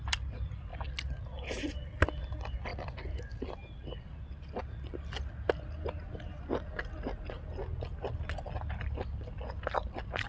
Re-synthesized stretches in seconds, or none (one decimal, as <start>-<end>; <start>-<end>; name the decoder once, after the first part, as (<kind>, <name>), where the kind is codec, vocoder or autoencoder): none